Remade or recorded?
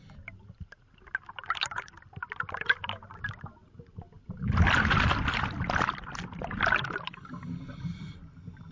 recorded